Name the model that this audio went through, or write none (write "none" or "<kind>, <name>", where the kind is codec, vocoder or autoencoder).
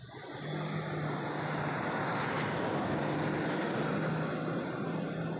none